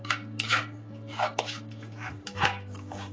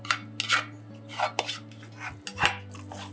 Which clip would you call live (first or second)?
second